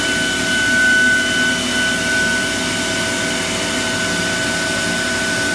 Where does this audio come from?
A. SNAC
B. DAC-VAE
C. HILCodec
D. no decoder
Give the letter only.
D